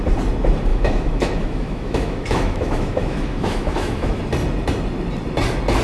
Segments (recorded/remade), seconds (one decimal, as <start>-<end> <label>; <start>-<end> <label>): 0.0-0.7 recorded; 0.7-4.2 remade; 4.2-5.8 recorded